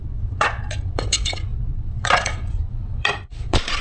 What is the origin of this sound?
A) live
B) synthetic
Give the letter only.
B